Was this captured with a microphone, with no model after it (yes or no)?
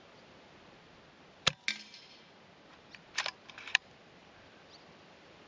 yes